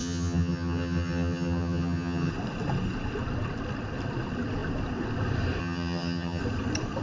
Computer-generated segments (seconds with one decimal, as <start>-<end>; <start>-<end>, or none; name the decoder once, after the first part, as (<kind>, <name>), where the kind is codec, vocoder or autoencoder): 0.0-2.3 (vocoder, HiFi-GAN); 5.6-6.4